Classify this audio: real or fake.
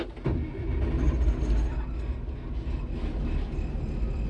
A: real